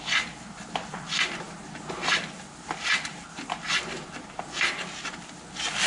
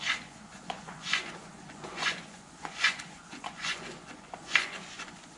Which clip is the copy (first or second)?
second